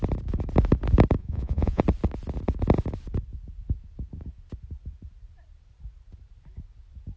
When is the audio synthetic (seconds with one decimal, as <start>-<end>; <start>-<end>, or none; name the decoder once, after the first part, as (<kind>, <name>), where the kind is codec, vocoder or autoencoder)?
1.2-1.8 (vocoder, Vocos)